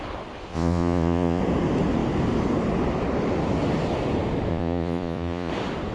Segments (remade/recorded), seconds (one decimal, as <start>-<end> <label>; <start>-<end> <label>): 0.0-0.5 recorded; 0.5-1.4 remade; 1.4-4.5 recorded; 4.5-5.5 remade; 5.5-5.9 recorded